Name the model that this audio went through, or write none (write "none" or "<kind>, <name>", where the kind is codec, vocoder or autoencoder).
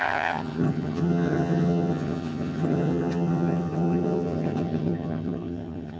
vocoder, HiFi-GAN